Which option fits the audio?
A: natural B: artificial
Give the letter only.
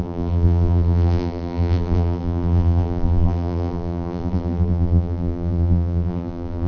B